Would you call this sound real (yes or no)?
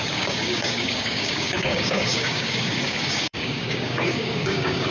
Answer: no